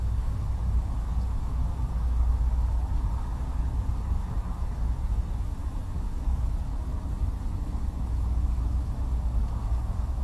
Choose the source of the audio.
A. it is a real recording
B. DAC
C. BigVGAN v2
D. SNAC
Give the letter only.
B